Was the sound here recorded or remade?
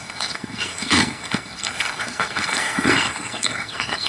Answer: remade